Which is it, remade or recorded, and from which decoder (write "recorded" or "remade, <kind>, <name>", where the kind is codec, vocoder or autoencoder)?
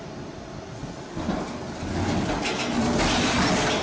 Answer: recorded